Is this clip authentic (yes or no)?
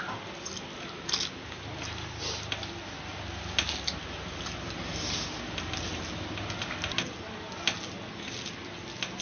yes